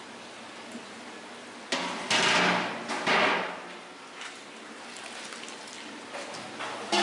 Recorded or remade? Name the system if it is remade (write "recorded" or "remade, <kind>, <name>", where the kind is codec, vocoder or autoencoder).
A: recorded